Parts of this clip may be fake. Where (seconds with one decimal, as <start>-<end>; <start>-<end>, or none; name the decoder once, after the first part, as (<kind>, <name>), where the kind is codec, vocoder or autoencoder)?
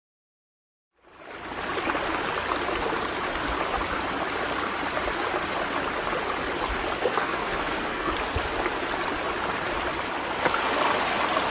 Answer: 7.0-8.1 (codec, SNAC)